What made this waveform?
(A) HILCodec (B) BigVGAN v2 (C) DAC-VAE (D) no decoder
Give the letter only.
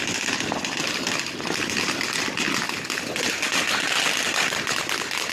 D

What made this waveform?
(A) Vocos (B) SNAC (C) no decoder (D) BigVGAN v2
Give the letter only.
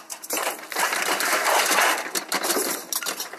D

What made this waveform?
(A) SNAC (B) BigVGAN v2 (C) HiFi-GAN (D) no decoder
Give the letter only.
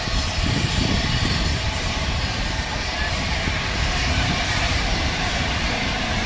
B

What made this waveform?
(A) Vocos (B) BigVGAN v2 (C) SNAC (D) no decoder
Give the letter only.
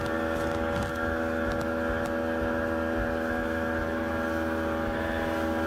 D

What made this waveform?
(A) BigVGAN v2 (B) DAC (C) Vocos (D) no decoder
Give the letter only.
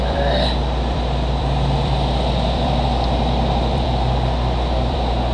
A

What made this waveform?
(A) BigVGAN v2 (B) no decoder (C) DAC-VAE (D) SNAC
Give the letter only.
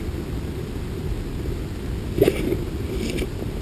B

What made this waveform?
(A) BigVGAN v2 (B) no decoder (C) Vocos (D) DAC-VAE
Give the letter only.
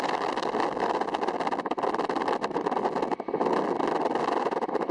B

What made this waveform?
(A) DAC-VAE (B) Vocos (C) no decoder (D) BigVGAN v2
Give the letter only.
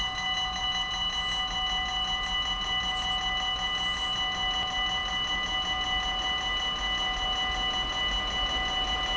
C